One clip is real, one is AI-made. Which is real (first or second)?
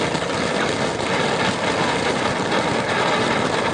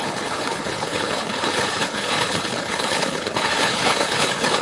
first